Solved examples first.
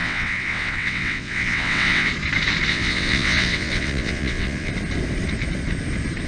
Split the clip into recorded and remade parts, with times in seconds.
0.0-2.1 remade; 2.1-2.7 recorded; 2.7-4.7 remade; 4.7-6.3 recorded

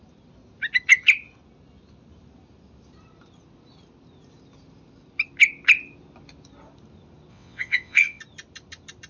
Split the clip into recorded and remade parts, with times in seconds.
0.0-7.3 recorded; 7.3-8.2 remade; 8.2-9.1 recorded